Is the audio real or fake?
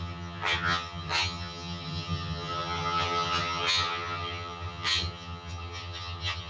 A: fake